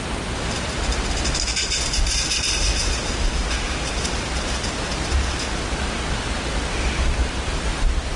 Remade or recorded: recorded